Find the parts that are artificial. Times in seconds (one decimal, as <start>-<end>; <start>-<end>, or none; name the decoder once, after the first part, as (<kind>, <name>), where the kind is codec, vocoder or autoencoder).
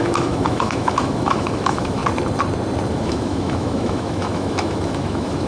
0.0-2.0 (autoencoder, DAC-VAE); 2.9-5.5